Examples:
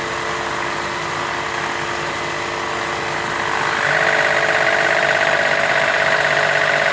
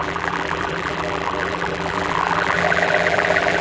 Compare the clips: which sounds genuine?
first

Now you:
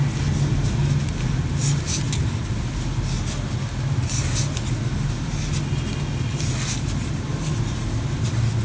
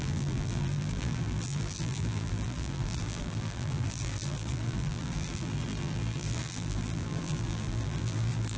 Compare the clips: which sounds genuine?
first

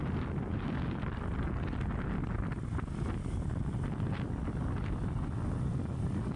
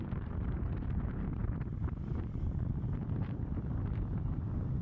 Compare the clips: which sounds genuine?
first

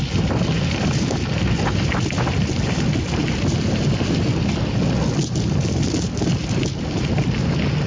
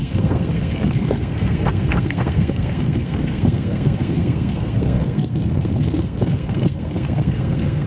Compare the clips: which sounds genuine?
first